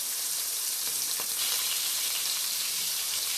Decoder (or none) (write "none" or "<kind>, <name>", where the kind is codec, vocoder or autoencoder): vocoder, BigVGAN v2